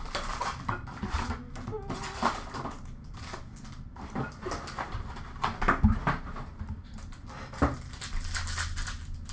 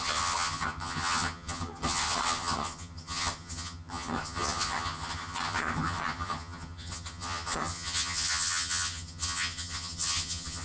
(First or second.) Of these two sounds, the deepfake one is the second